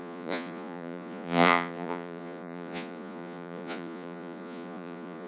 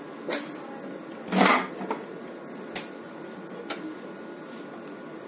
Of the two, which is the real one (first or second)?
second